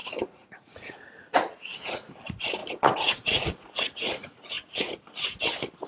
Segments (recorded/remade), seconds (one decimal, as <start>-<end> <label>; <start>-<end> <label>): 0.0-2.1 remade; 2.1-2.6 recorded; 2.6-5.4 remade; 5.4-5.9 recorded